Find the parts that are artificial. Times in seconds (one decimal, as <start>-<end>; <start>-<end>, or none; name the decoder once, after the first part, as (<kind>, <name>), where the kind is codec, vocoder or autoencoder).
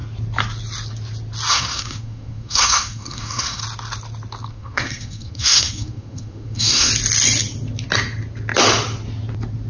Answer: 1.5-3.6 (codec, SNAC); 4.5-6.9